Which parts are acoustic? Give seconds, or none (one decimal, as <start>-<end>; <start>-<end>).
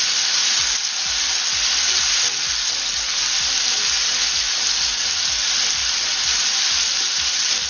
0.0-5.8; 7.3-7.7